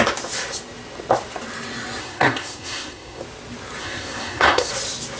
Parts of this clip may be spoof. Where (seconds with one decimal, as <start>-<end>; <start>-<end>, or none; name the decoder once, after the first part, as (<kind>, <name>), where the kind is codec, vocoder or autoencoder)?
2.0-3.2 (codec, SNAC); 3.8-4.7